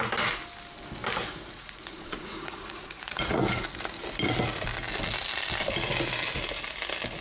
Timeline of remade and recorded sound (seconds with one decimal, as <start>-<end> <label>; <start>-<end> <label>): 0.0-1.2 recorded; 1.2-3.4 remade; 3.4-7.2 recorded